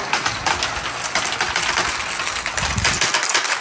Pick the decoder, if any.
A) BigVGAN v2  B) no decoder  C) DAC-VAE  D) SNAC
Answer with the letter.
B